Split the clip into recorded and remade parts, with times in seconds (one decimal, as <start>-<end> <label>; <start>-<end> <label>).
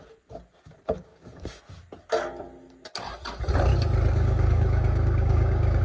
0.0-1.1 recorded; 1.1-1.6 remade; 1.6-4.1 recorded; 4.1-5.8 remade